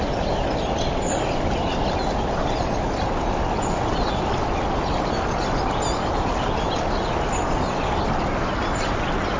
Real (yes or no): yes